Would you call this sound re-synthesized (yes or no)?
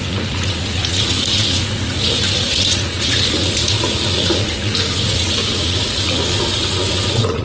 yes